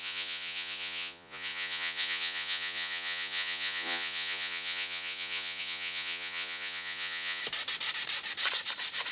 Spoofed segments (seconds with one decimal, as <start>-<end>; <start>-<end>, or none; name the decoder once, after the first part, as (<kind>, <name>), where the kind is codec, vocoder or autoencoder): 0.0-7.4 (vocoder, Vocos)